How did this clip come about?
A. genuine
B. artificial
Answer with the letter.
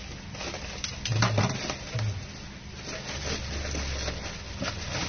A